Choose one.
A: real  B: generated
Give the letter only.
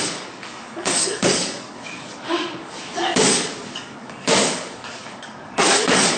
B